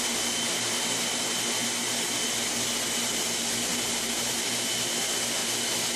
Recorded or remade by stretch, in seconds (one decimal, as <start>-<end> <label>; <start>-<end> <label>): 0.0-3.7 recorded; 3.7-4.6 remade; 4.6-6.0 recorded